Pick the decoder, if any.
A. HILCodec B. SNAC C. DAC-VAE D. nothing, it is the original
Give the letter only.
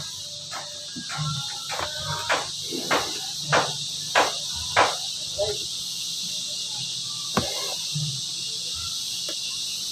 D